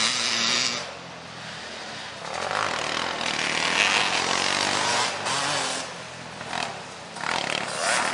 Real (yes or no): yes